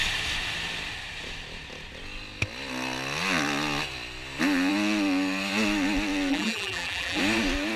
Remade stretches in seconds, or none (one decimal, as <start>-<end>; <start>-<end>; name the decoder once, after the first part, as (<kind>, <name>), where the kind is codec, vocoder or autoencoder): 6.3-7.2 (vocoder, BigVGAN v2)